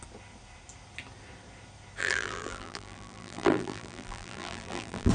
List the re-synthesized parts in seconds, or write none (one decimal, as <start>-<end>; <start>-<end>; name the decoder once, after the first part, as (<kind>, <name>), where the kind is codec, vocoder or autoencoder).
2.0-5.1 (vocoder, BigVGAN v2)